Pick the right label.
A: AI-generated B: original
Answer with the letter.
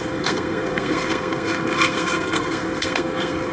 A